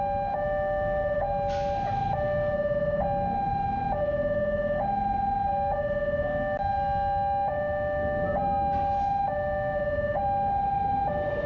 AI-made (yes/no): no